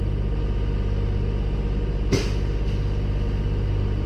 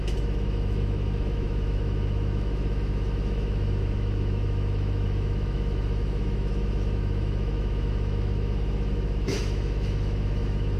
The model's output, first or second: second